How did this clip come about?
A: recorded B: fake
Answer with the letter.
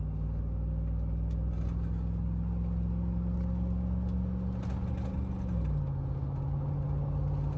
A